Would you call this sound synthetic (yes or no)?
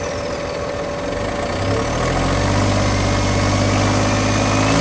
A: no